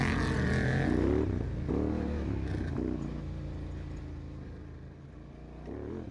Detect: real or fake real